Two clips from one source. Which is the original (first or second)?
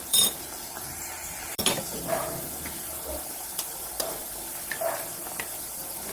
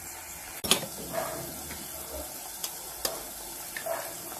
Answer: second